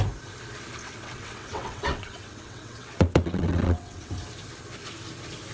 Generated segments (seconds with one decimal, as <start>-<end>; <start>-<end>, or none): 0.8-4.1